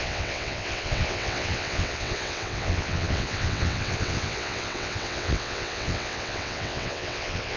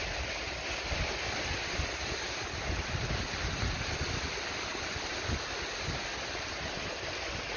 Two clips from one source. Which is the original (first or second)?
second